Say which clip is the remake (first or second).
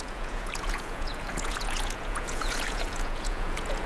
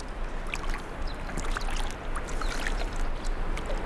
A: first